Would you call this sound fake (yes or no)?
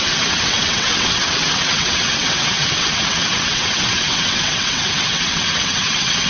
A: yes